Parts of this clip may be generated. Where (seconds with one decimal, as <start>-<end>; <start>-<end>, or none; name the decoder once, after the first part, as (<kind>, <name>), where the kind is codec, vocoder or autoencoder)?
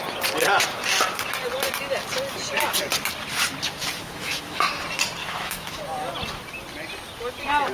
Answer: 4.0-4.7 (autoencoder, DAC-VAE); 5.2-5.8